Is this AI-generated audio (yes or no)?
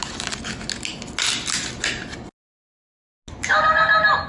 no